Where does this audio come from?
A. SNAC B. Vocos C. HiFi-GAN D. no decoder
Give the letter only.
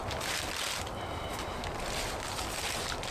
D